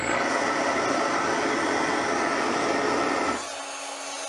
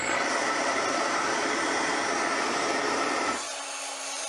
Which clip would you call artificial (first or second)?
second